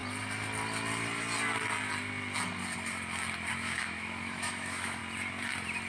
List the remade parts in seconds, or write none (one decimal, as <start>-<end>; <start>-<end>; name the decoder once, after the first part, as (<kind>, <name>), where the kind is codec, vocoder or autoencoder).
3.5-5.0 (autoencoder, DAC-VAE)